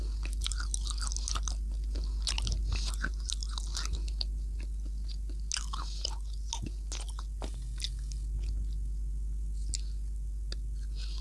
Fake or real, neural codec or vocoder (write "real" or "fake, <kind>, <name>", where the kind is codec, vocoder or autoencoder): real